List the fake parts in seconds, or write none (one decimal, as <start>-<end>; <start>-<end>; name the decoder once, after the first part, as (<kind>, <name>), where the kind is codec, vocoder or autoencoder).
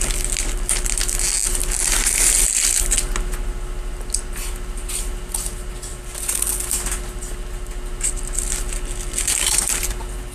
none